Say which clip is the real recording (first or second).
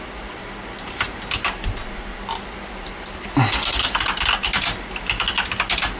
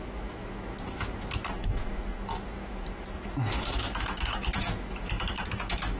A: first